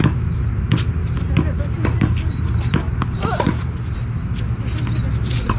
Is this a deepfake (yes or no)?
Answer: no